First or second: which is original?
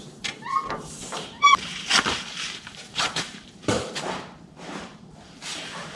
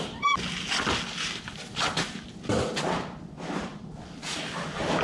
second